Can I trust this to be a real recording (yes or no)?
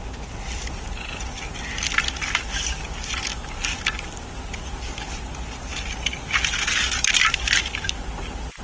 yes